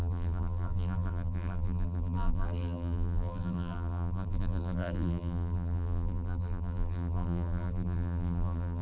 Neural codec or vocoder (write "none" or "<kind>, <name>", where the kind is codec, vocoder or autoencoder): vocoder, BigVGAN v2